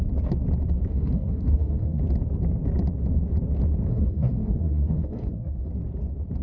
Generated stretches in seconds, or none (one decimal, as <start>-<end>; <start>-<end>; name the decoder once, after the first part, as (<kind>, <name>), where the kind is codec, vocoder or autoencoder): 0.9-2.0 (codec, SNAC); 3.9-5.7